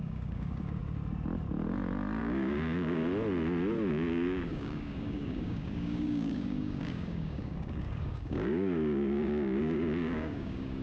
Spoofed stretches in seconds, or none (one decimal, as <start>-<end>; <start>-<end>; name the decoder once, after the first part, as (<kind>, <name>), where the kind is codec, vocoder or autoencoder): 0.0-0.8 (codec, DAC); 2.2-3.0; 3.9-10.8